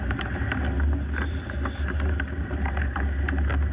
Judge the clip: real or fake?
real